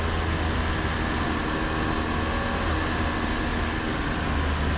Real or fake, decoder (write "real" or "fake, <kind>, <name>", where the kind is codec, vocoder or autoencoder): real